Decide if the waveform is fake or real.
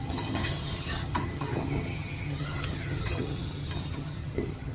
fake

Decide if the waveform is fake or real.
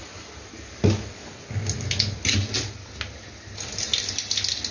real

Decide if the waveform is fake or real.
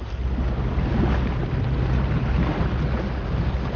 real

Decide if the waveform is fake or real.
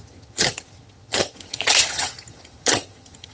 fake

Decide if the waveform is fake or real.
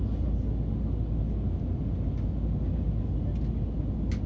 real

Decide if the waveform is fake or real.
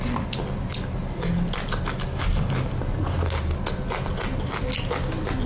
real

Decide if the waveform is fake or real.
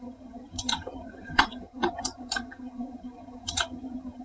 fake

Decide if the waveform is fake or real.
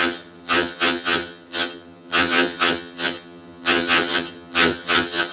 fake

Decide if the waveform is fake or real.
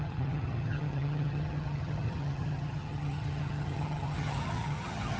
fake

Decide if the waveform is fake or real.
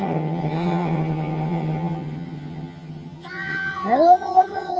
fake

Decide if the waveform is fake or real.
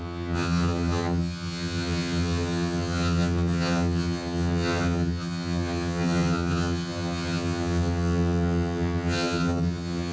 fake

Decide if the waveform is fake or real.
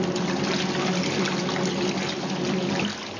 real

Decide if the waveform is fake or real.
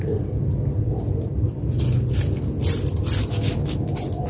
real